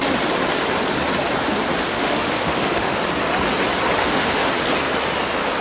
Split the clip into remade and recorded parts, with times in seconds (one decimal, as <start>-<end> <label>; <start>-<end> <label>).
0.0-1.9 recorded; 1.9-3.0 remade; 3.0-4.0 recorded; 4.0-4.5 remade; 4.5-5.6 recorded